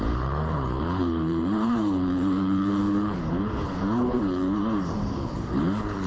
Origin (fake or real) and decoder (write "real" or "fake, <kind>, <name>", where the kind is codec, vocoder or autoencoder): fake, codec, HILCodec